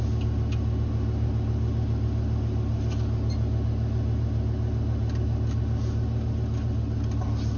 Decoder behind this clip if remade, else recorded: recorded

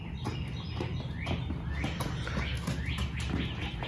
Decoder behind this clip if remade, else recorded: recorded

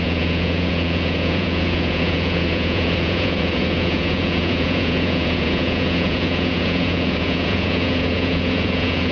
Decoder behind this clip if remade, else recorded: remade, vocoder, Vocos